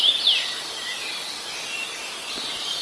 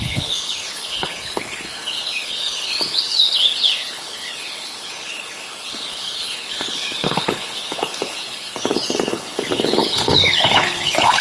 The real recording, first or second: first